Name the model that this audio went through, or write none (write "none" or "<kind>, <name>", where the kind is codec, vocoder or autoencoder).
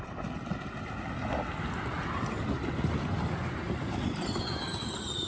none